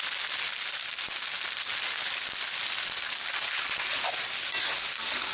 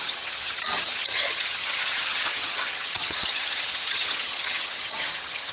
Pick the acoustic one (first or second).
first